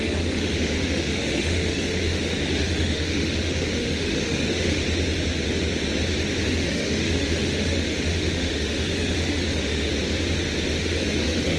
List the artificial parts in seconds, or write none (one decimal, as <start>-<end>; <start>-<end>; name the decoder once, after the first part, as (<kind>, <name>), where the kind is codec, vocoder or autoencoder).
0.0-4.8 (autoencoder, DAC-VAE); 6.4-9.9; 10.8-11.6